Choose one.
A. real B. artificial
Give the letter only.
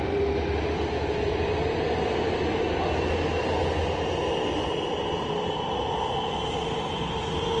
A